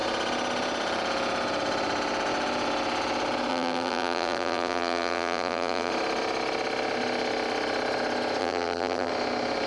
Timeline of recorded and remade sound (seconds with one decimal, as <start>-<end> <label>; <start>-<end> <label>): 0.0-3.5 recorded; 3.5-5.9 remade; 5.9-8.4 recorded; 8.4-9.1 remade; 9.1-9.7 recorded